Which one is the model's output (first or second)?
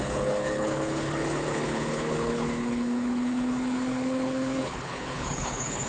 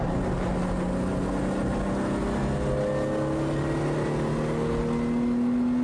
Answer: first